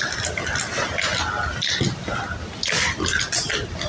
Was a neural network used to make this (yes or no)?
no